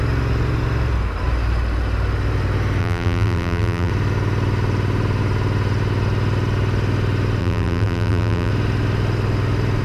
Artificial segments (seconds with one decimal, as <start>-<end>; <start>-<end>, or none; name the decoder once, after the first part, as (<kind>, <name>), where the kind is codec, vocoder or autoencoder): 2.8-3.9 (vocoder, BigVGAN v2); 7.4-8.5